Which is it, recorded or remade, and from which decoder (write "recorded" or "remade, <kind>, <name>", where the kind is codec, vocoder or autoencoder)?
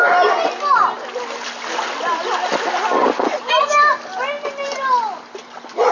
recorded